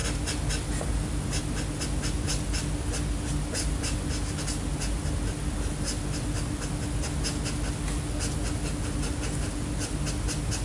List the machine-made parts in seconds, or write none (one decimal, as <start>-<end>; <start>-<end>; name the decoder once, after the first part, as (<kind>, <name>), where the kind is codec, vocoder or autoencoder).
none